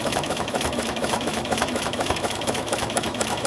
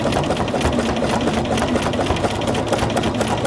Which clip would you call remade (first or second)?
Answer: first